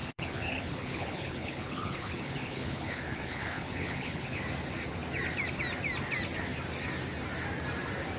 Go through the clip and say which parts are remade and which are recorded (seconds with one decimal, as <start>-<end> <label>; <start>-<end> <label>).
0.0-4.4 remade; 4.4-8.2 recorded